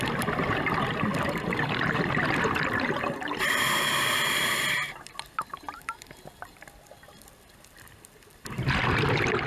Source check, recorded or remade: recorded